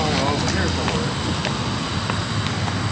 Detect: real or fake real